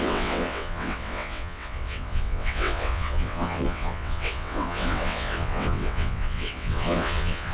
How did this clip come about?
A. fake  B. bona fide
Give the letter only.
A